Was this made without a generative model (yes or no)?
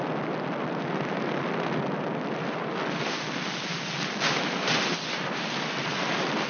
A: yes